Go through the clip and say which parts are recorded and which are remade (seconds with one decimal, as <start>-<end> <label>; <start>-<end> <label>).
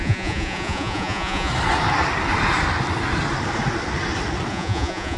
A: 0.0-1.5 remade; 1.5-4.5 recorded; 4.5-5.2 remade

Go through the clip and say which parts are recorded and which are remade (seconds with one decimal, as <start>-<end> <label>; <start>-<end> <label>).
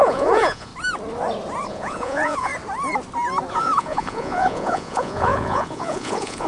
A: 0.0-0.7 remade; 0.7-1.7 recorded; 1.7-2.5 remade; 2.5-3.5 recorded; 3.5-6.5 remade